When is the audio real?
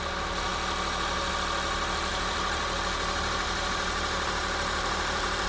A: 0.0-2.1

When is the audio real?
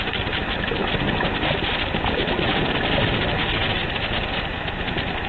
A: 0.0-5.3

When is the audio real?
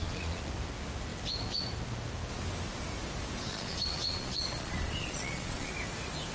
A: 0.5-3.5; 5.7-6.3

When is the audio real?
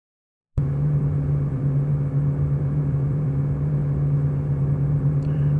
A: 1.9-2.6; 3.8-4.3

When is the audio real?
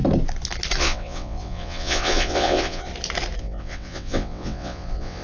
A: 0.0-0.8; 2.9-3.4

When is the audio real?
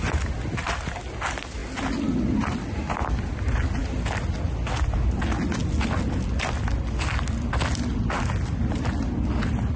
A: 0.0-9.8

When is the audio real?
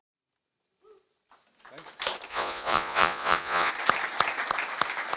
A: 0.0-2.3; 3.7-5.2